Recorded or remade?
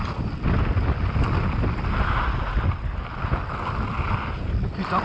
recorded